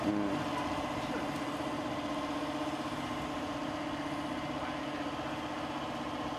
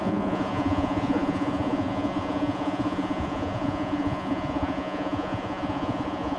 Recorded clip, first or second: first